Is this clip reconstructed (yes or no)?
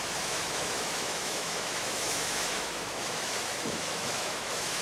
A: yes